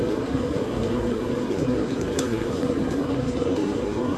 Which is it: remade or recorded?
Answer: remade